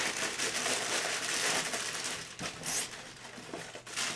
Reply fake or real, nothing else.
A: real